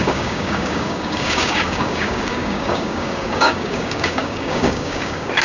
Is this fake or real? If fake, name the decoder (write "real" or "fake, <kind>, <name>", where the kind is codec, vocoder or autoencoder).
fake, codec, DAC